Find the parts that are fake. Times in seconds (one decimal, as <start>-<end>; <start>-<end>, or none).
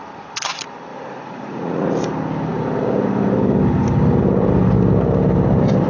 0.9-1.9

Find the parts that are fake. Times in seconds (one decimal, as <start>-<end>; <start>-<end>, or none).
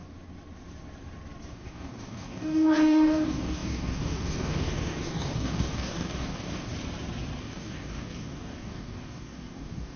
1.5-6.7; 7.4-10.0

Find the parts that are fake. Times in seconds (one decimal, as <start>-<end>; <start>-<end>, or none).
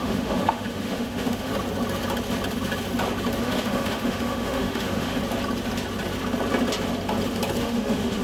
0.0-1.5; 3.4-5.2; 7.6-8.2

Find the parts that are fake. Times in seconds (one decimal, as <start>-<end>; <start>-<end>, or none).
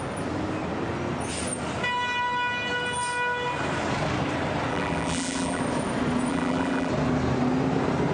4.7-5.6; 6.3-6.9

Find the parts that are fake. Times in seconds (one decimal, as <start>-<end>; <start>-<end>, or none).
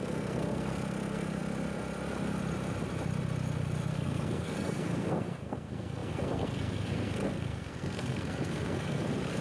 0.0-1.4; 3.9-9.4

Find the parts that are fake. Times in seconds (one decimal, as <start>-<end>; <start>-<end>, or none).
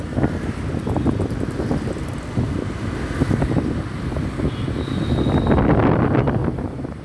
6.4-7.0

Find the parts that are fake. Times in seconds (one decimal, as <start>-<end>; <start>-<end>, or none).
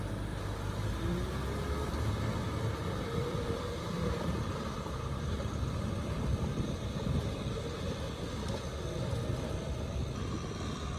2.4-7.1